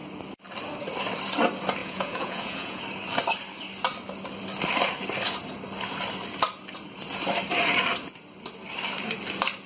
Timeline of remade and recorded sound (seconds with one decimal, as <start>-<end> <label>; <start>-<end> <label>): 0.0-1.8 recorded; 1.8-2.8 remade; 2.8-9.7 recorded